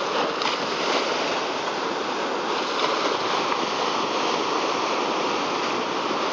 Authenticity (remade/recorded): recorded